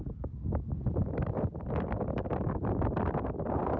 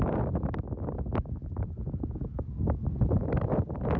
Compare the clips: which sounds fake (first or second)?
first